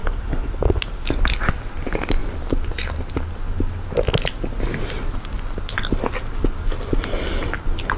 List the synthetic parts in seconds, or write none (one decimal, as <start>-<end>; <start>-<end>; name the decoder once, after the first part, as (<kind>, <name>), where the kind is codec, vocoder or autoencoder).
0.0-1.5 (vocoder, BigVGAN v2)